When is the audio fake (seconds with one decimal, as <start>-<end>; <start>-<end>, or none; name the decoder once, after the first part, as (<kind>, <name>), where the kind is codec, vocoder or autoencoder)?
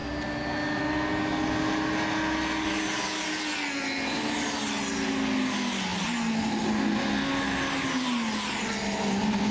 none